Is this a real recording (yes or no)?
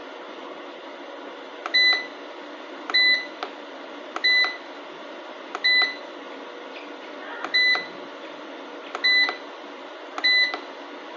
yes